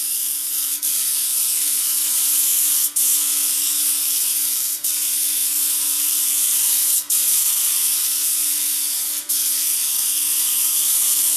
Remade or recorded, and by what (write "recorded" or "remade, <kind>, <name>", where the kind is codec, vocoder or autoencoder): remade, codec, SNAC